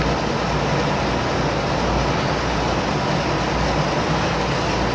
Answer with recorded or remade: recorded